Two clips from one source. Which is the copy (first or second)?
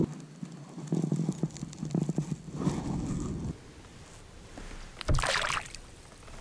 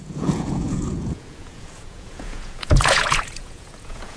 second